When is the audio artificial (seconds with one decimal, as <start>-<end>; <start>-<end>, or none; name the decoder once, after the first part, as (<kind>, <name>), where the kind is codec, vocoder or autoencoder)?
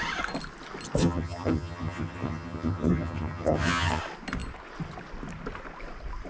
1.0-4.0 (vocoder, HiFi-GAN)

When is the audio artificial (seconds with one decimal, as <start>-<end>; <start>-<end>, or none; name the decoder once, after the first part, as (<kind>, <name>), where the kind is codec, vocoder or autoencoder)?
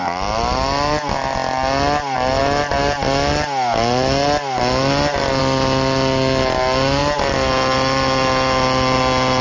none